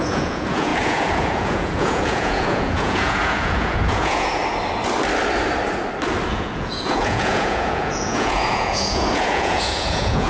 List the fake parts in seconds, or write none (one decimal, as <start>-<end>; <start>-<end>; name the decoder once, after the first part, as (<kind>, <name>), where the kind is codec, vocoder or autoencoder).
0.0-4.4 (vocoder, Vocos); 6.3-10.3

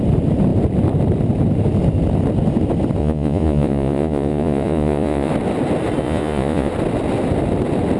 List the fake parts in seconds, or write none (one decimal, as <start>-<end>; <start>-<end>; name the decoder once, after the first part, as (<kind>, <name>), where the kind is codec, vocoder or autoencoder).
3.0-5.3 (vocoder, Vocos); 6.0-6.7

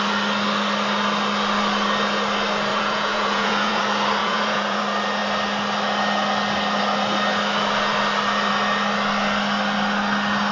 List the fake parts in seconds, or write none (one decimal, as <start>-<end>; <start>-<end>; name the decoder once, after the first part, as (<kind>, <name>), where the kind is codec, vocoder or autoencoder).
2.7-3.8 (vocoder, Vocos); 4.2-4.8